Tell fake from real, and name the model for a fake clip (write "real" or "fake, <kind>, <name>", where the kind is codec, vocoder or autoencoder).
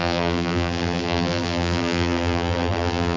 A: fake, vocoder, BigVGAN v2